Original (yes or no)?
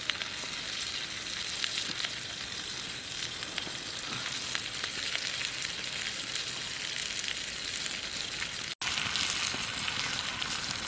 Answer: yes